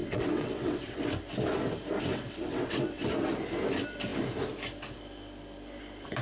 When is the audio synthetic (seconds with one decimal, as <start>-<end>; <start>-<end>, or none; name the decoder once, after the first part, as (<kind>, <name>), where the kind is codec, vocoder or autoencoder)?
0.0-1.1 (vocoder, WaveNeXt); 2.1-3.1